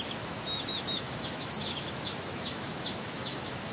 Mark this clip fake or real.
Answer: fake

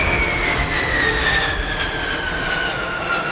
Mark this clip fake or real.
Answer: real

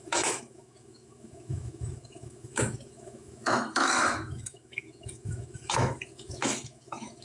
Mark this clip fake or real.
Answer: fake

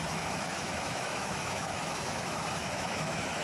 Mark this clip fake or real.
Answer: fake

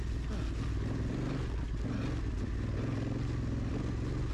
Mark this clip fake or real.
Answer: real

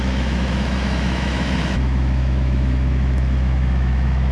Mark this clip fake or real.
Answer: fake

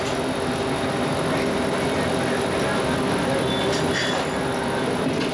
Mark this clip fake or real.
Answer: real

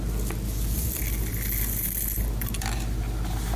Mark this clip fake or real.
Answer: real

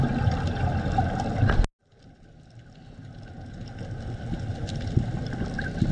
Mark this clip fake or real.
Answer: real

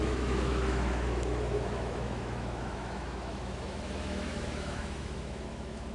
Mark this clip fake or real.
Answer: fake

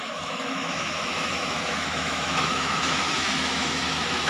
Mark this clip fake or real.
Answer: fake